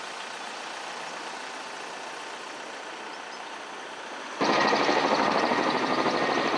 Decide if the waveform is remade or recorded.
recorded